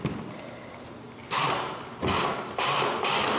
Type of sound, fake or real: real